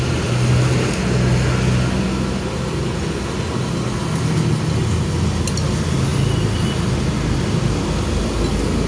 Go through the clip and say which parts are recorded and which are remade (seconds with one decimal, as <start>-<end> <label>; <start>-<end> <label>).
0.0-8.9 recorded